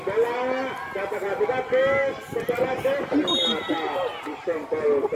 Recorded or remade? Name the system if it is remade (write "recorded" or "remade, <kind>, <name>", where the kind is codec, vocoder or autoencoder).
recorded